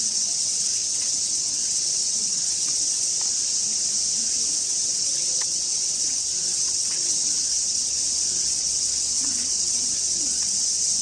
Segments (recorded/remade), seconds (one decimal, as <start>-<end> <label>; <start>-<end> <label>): 0.0-3.1 remade; 3.1-4.6 recorded; 4.6-11.0 remade